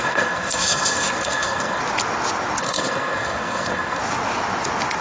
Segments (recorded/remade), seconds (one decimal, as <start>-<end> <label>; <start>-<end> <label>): 0.0-1.8 remade; 1.8-2.6 recorded; 2.6-4.0 remade; 4.0-5.0 recorded